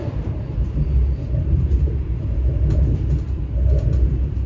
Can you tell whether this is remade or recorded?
remade